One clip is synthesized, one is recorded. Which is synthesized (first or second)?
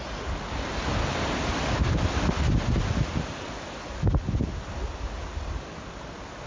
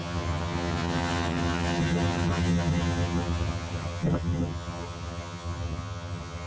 second